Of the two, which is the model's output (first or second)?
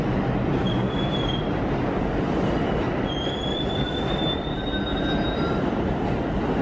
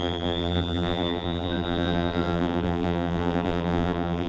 second